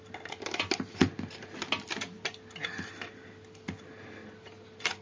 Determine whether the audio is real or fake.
real